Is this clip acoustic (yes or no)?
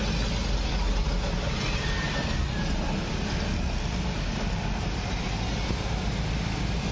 yes